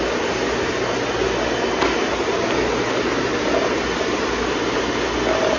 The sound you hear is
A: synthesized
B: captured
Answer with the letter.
B